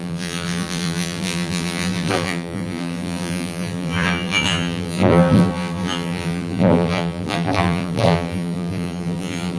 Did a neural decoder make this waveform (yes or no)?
yes